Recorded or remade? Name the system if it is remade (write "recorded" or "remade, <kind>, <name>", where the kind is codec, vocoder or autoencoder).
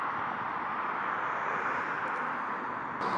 recorded